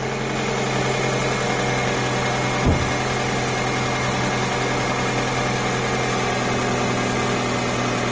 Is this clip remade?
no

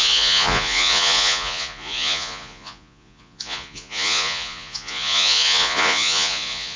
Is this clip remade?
yes